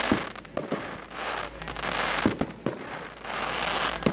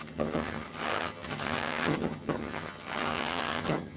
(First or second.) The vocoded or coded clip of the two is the second